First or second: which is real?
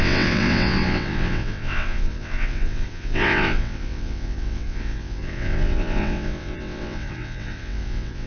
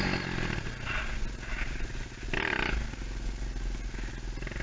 second